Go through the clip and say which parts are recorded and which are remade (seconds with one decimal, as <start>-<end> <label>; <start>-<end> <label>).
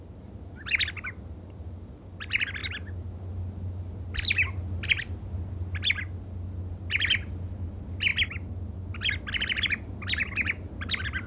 0.0-11.3 recorded